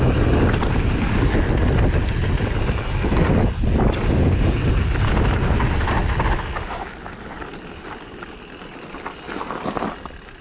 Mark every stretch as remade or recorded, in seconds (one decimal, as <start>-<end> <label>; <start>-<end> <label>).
0.0-10.4 recorded